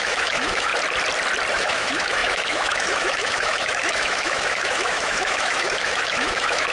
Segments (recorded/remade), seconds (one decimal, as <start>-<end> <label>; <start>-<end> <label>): 0.0-0.7 remade; 0.7-1.5 recorded; 1.5-6.7 remade